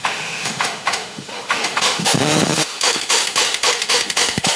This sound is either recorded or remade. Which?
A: remade